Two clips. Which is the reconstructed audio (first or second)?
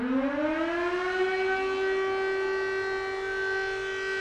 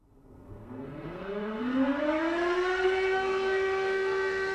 second